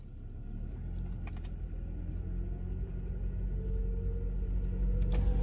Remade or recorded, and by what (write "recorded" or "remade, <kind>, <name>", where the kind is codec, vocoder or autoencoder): recorded